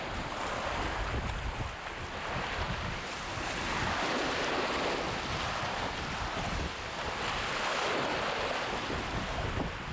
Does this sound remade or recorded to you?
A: recorded